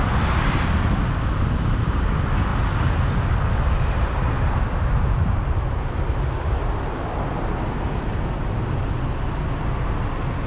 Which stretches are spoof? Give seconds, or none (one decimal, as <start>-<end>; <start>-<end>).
none